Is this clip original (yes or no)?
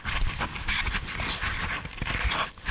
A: yes